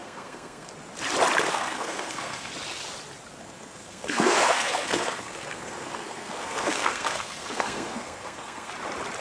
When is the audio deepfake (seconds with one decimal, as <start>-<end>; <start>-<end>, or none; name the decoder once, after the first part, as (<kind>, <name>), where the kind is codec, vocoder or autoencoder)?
0.0-0.7 (codec, SNAC); 1.5-2.5; 3.4-8.7